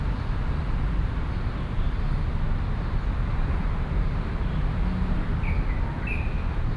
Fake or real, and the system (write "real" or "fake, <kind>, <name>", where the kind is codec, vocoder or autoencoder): real